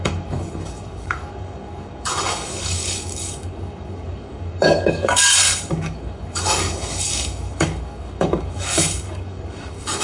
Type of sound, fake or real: fake